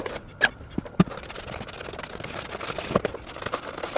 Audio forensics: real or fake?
real